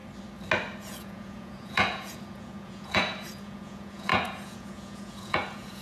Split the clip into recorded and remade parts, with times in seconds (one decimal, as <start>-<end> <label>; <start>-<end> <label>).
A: 0.0-0.8 recorded; 0.8-5.8 remade

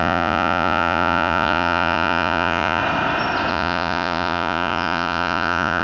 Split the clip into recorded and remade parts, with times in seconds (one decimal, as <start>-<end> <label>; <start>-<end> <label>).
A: 0.0-2.8 remade; 2.8-3.5 recorded; 3.5-5.8 remade

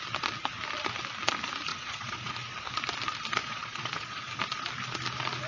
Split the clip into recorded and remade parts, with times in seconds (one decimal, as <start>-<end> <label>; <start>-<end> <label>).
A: 0.0-1.7 recorded; 1.7-2.3 remade; 2.3-3.4 recorded; 3.4-4.3 remade; 4.3-5.5 recorded

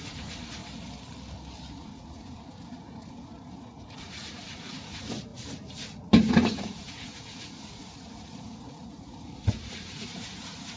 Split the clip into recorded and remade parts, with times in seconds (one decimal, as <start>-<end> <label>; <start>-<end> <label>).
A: 0.0-0.6 remade; 0.6-1.7 recorded; 1.7-5.3 remade; 5.3-6.3 recorded; 6.3-10.8 remade

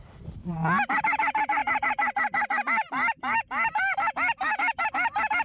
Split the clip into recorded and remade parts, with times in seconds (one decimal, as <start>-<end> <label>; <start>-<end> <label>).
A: 0.0-5.4 recorded

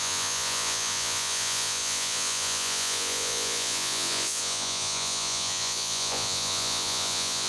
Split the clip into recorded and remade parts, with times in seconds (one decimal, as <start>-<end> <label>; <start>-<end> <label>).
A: 0.0-7.5 remade

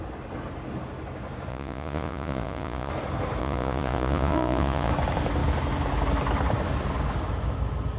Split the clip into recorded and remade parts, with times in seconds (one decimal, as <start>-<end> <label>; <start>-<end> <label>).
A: 0.0-1.5 recorded; 1.5-2.9 remade; 2.9-3.4 recorded; 3.4-4.9 remade; 4.9-8.0 recorded